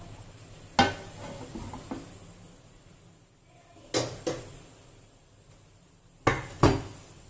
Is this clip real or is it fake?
real